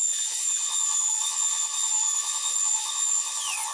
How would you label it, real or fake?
fake